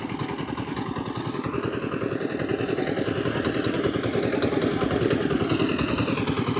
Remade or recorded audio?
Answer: recorded